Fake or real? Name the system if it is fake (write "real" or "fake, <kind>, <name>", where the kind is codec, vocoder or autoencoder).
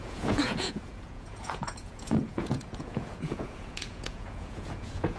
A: fake, vocoder, Vocos